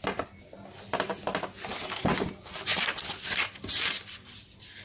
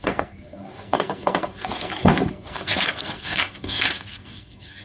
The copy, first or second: second